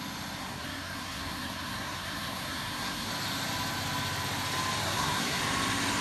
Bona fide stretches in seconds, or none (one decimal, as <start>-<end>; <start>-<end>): 0.0-0.4; 3.1-4.8; 5.4-6.0